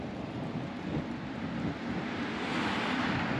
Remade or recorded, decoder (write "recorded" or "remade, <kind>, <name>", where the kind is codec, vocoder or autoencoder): recorded